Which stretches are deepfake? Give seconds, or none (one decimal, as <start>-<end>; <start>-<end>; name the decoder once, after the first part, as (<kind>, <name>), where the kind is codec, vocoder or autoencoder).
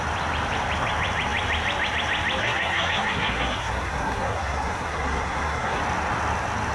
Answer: 2.4-5.8 (codec, SNAC)